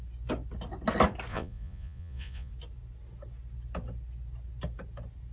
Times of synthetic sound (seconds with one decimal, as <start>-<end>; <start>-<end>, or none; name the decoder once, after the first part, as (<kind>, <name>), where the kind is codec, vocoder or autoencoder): 1.3-2.5 (vocoder, Vocos)